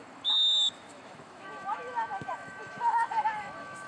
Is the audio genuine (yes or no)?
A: no